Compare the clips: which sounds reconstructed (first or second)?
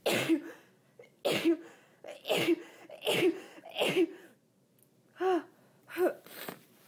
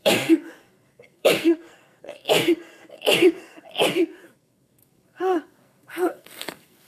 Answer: second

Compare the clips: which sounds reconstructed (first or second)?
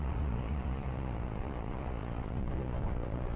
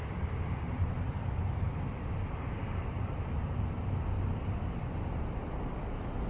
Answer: first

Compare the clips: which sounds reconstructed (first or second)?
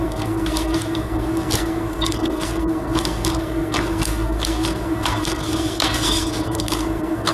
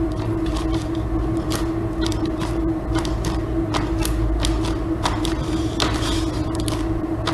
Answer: first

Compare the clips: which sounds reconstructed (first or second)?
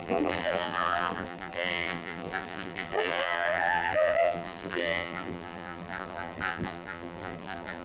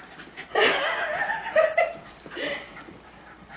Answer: first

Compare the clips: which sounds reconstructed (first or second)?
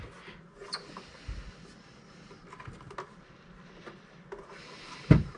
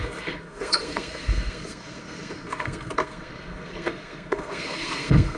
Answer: second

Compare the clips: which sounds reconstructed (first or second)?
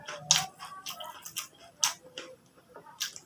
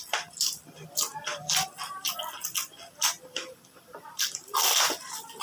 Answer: second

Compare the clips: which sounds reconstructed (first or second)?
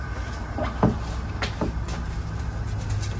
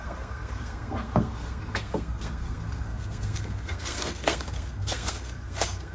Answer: second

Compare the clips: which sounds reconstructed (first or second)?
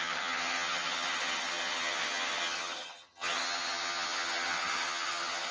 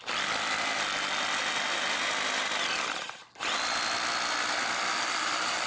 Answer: first